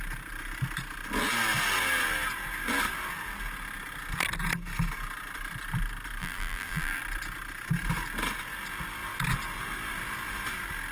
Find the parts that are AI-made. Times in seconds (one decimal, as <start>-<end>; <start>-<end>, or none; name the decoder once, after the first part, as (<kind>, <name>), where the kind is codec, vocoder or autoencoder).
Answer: 6.2-7.0 (vocoder, BigVGAN v2)